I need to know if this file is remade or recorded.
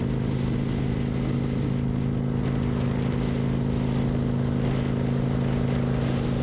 recorded